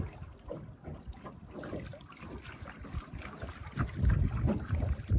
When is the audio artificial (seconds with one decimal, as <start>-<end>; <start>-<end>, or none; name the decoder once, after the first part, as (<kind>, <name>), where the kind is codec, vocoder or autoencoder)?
none

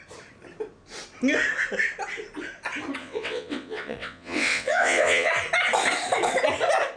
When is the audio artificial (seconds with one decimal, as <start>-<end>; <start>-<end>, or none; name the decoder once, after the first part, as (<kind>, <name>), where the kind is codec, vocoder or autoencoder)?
3.0-5.3 (vocoder, WaveNeXt)

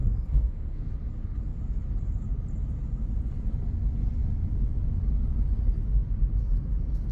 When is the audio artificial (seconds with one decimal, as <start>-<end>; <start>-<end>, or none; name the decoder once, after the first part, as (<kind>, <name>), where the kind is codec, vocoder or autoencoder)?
0.0-0.9 (codec, SNAC)

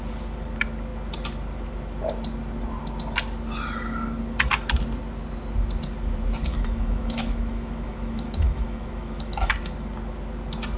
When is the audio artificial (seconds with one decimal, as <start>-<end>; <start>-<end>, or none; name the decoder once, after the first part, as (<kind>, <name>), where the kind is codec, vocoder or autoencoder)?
6.5-9.5 (autoencoder, DAC-VAE)

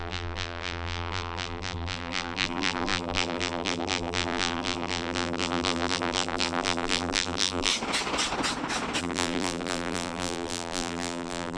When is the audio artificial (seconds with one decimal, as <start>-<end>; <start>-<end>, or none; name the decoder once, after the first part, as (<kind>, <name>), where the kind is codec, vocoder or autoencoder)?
0.0-7.7 (vocoder, BigVGAN v2); 9.0-11.6

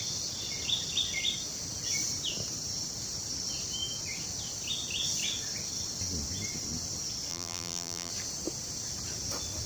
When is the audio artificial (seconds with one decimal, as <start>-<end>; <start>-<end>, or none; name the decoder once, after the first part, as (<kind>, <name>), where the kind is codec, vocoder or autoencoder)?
7.3-8.1 (vocoder, BigVGAN v2)

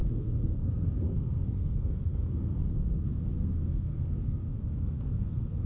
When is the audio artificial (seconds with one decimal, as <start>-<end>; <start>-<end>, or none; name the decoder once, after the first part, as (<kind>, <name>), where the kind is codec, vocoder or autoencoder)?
0.0-5.7 (codec, SNAC)